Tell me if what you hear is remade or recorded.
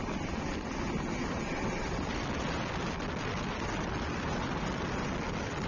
recorded